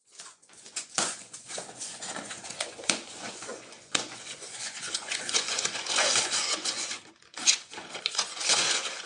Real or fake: fake